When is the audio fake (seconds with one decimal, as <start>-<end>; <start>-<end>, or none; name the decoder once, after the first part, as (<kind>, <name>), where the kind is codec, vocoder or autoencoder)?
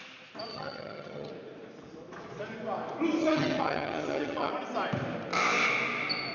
0.5-1.3 (vocoder, HiFi-GAN); 3.2-4.5